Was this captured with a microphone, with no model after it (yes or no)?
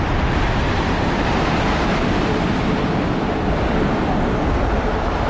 yes